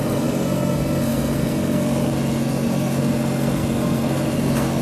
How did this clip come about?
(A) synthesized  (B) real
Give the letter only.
A